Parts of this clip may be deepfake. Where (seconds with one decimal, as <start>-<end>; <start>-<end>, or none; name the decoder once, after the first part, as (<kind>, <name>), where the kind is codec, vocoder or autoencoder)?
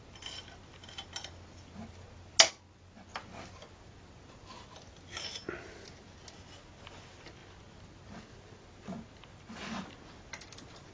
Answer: none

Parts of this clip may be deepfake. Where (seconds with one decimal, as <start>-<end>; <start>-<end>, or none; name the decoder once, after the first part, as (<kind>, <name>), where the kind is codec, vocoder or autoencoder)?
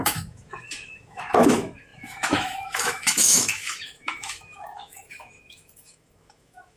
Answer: 0.0-6.8 (autoencoder, DAC-VAE)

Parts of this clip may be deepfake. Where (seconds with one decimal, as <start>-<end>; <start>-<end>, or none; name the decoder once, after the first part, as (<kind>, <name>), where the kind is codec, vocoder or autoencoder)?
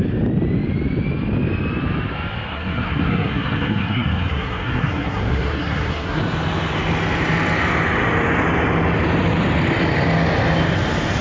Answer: 2.5-6.2 (codec, SNAC)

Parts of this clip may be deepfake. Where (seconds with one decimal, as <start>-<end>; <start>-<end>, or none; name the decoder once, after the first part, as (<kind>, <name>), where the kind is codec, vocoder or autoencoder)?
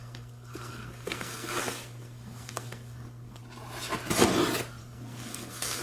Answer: 0.0-3.4 (codec, SNAC); 4.8-5.8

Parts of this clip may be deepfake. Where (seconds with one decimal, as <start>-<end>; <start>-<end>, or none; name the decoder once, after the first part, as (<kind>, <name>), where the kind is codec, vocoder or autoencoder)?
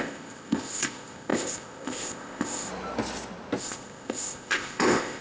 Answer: 0.0-2.7 (codec, ZipCodec); 3.6-5.2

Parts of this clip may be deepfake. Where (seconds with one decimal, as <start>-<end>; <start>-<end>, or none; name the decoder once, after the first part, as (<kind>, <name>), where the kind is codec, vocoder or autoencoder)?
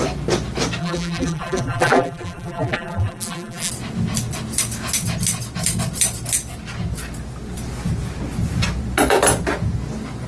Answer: 0.8-3.7 (vocoder, BigVGAN v2)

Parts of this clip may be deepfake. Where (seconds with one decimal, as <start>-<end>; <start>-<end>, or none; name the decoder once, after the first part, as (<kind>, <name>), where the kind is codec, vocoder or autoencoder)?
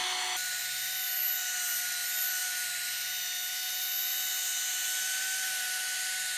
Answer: none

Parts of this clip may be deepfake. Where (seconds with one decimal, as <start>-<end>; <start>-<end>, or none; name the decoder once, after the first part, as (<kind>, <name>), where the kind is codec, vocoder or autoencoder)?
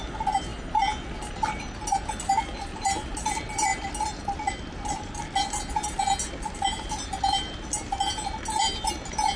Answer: none